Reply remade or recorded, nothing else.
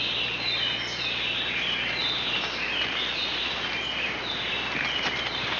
recorded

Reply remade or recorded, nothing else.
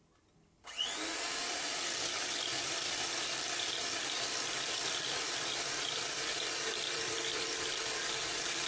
recorded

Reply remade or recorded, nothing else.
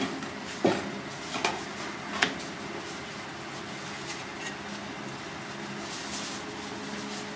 recorded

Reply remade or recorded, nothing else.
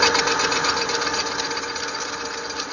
recorded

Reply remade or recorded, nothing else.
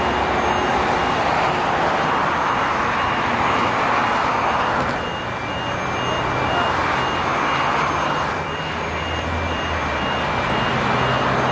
recorded